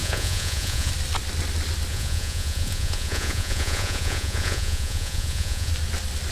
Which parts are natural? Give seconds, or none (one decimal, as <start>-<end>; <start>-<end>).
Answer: 0.9-1.9; 5.7-6.3